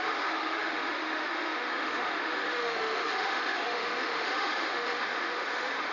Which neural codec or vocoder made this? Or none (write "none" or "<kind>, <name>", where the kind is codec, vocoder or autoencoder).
autoencoder, DAC-VAE